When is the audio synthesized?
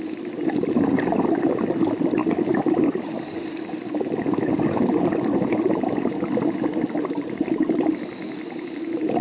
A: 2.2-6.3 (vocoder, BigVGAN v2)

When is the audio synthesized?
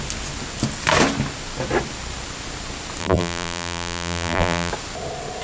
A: 3.0-4.7 (vocoder, BigVGAN v2)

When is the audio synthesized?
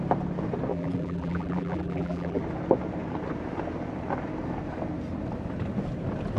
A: 0.7-2.4 (vocoder, BigVGAN v2)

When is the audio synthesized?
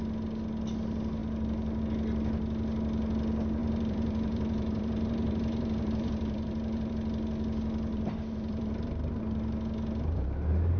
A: 3.6-6.9 (vocoder, BigVGAN v2); 7.9-9.2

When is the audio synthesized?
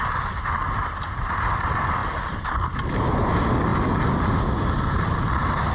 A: 2.0-2.7 (vocoder, BigVGAN v2)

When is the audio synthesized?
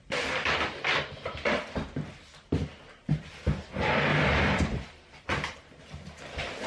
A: 4.1-4.9 (vocoder, BigVGAN v2)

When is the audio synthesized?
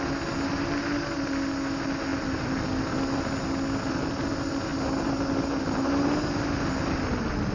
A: 2.1-3.2 (vocoder, BigVGAN v2)